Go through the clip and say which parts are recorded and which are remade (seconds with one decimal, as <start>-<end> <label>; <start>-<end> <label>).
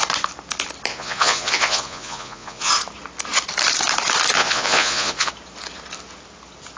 0.0-0.9 recorded; 0.9-2.7 remade; 2.7-4.4 recorded; 4.4-5.3 remade; 5.3-6.8 recorded